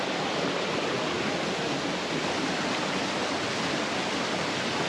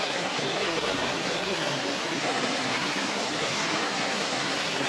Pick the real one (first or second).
first